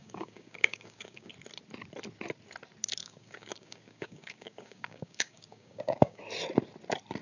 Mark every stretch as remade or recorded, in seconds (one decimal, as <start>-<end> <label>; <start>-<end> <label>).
0.0-1.3 remade; 1.3-3.0 recorded; 3.0-6.2 remade; 6.2-7.2 recorded